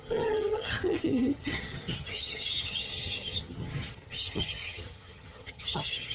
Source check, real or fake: fake